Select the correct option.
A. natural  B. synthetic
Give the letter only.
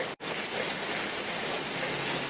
A